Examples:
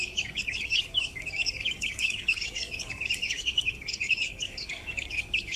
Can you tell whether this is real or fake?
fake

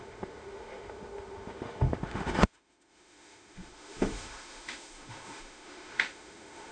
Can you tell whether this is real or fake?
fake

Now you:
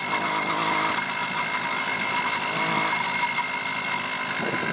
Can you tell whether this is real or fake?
real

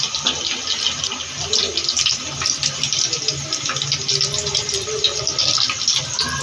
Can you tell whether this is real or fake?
real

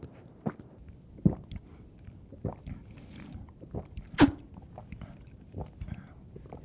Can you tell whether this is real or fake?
real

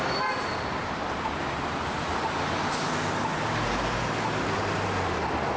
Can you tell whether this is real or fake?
real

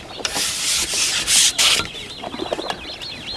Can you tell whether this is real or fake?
real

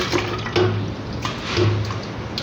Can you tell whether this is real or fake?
real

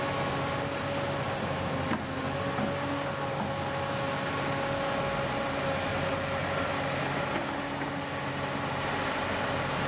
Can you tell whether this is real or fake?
real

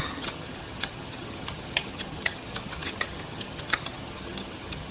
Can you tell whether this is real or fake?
fake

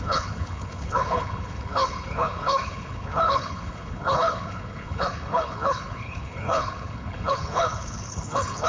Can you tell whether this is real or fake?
fake